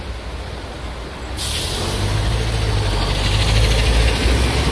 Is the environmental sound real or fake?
real